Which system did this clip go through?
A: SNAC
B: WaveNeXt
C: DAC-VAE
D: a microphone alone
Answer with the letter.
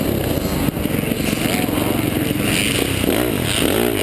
D